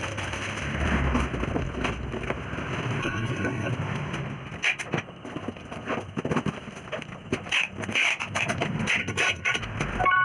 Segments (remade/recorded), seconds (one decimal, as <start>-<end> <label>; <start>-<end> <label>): 0.0-3.0 recorded; 3.0-3.7 remade; 3.7-9.0 recorded; 9.0-9.6 remade; 9.6-10.2 recorded